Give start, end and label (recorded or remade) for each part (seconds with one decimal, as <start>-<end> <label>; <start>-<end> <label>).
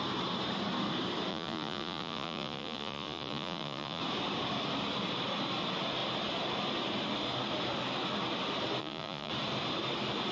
0.0-1.3 recorded; 1.3-4.0 remade; 4.0-8.8 recorded; 8.8-9.3 remade; 9.3-10.3 recorded